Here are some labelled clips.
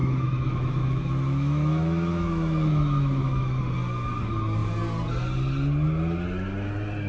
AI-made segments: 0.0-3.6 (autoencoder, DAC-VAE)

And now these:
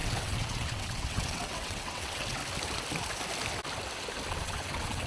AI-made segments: 0.0-2.4 (vocoder, WaveNeXt); 4.3-5.1

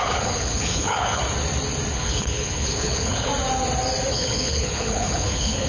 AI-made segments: 0.0-1.2 (codec, HILCodec); 1.9-3.3; 4.1-5.7